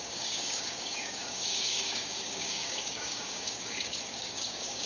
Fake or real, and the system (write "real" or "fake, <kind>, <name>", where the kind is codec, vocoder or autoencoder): fake, codec, DAC